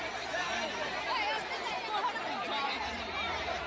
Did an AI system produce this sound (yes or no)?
yes